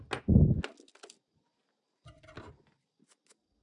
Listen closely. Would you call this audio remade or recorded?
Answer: recorded